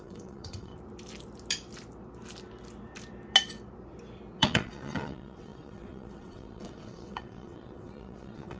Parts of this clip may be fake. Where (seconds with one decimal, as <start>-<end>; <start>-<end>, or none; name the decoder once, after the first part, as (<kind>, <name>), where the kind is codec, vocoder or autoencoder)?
0.0-0.7 (vocoder, WaveNeXt); 4.4-8.6